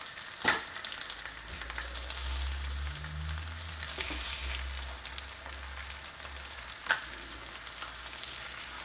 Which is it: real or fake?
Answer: real